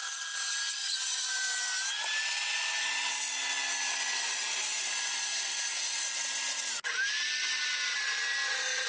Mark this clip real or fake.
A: real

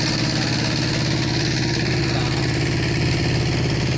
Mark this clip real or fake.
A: real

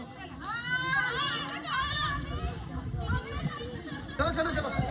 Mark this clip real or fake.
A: real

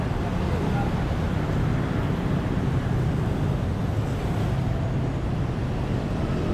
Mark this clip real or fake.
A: real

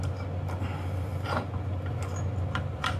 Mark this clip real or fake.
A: real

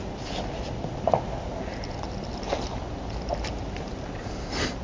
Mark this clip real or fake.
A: real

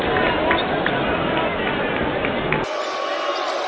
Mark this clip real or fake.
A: real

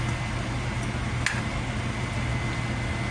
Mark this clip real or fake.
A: real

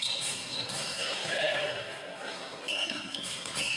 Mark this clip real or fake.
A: fake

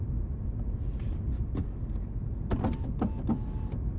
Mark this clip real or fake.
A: real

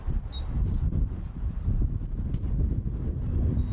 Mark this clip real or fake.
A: real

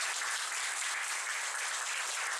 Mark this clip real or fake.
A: real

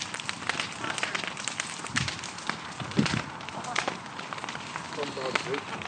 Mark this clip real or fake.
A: real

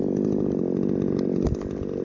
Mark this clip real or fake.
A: real